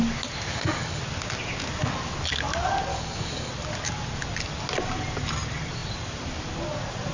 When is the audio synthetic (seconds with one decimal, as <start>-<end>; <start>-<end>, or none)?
0.5-1.0; 2.9-3.5